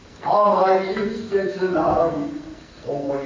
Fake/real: fake